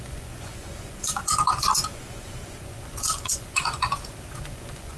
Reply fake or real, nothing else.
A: fake